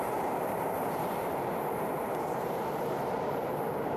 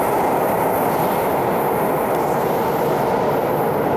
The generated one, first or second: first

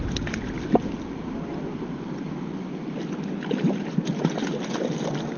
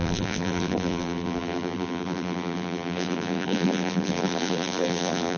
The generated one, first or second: second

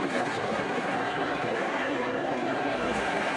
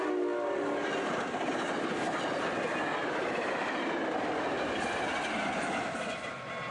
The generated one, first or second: first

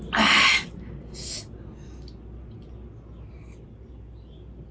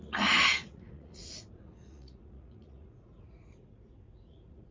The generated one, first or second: second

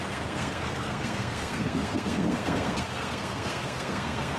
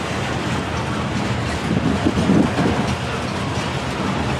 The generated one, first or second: first